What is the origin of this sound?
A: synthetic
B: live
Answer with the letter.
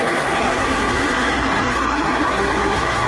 A